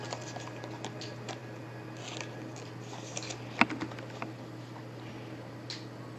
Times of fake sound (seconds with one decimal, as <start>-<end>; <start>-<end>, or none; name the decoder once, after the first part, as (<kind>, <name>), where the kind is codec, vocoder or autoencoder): none